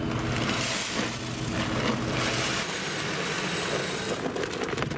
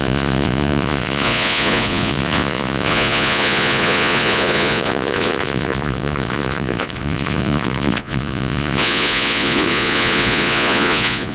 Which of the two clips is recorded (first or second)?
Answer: first